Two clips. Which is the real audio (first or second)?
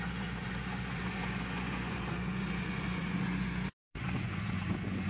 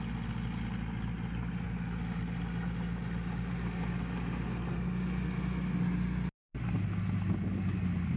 second